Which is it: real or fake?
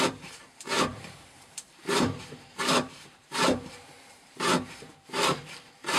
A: fake